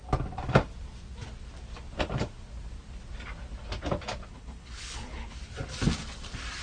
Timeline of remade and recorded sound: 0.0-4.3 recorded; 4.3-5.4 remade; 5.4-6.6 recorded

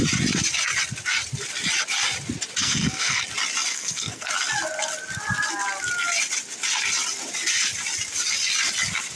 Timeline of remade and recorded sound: 0.0-2.6 recorded; 2.6-3.2 remade; 3.2-3.7 recorded; 3.7-4.3 remade; 4.3-9.2 recorded